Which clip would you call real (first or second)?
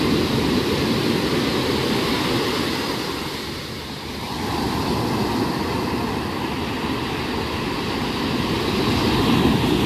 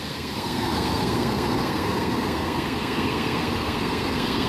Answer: first